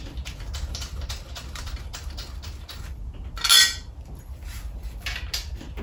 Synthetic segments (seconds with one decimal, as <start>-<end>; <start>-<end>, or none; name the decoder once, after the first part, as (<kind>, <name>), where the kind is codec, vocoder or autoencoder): none